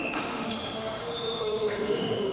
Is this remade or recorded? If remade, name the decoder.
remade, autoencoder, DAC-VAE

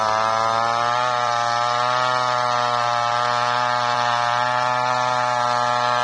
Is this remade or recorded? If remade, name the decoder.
recorded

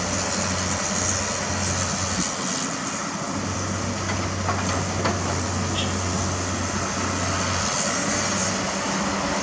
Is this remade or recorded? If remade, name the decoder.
recorded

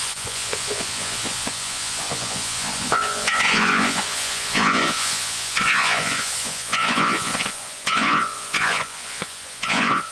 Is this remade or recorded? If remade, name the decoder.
remade, vocoder, Vocos